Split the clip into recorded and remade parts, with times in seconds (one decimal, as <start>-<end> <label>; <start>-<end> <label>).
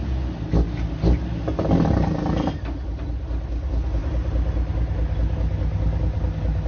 0.0-6.7 recorded